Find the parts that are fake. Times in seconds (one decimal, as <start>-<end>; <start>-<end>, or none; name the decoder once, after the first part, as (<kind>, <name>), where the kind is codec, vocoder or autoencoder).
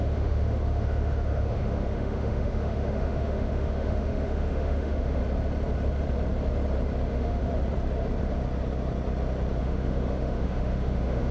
0.0-5.2 (autoencoder, DAC-VAE); 7.1-7.5; 9.6-11.3